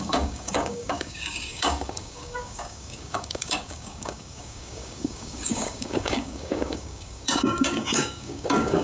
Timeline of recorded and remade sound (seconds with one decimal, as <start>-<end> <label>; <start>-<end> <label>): 0.0-8.8 remade